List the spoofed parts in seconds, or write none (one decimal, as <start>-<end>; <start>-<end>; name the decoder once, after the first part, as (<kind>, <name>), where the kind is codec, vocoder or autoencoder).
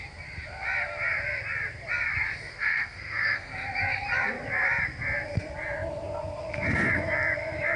2.5-3.5 (codec, SNAC)